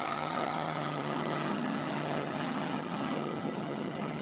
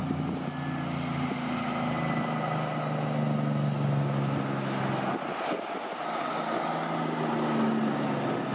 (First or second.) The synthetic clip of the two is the first